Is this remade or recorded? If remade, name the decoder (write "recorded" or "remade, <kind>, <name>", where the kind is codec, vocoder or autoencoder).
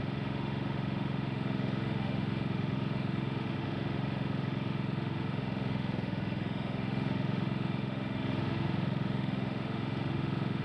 remade, autoencoder, DAC-VAE